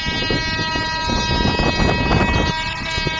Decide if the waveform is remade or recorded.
recorded